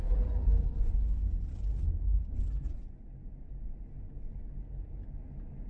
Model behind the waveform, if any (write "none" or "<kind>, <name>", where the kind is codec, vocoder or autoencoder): none